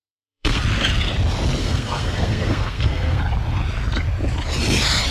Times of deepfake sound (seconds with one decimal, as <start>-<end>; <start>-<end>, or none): 0.0-0.6; 1.6-3.2